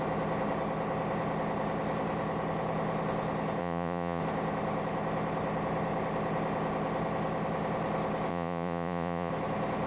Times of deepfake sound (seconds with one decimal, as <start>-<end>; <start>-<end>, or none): 3.6-4.2; 8.3-9.3